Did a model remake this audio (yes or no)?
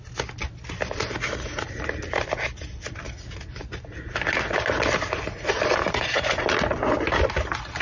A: no